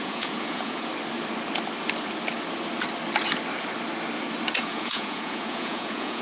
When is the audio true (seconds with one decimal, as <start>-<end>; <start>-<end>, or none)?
0.9-4.6